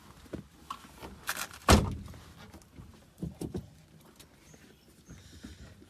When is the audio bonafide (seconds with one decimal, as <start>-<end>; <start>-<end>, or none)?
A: 0.0-1.0; 1.9-2.9; 3.6-5.9